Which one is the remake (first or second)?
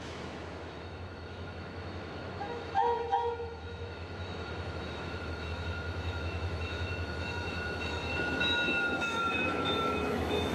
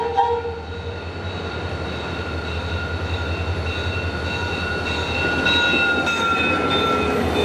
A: first